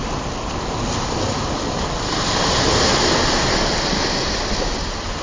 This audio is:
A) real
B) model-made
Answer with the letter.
A